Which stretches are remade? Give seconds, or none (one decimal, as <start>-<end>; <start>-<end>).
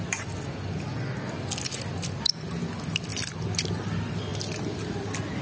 none